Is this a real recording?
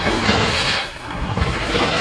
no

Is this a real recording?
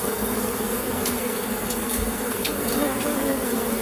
no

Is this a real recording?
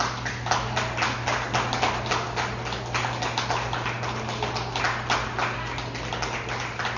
yes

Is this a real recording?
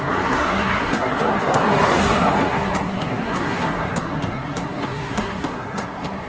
no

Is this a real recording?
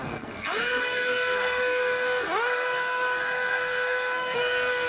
no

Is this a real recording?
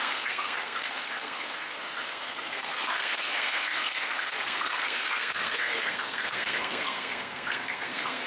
no